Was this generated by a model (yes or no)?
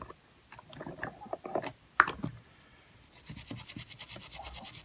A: no